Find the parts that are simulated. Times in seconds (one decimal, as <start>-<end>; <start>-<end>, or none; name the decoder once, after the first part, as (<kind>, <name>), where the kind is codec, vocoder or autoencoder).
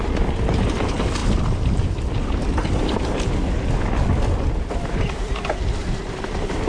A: none